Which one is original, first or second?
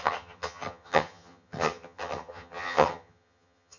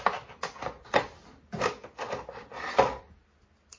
second